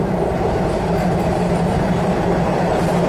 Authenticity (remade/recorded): remade